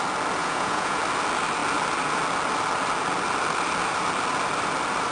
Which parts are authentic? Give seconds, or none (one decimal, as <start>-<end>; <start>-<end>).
0.0-0.4; 1.0-5.1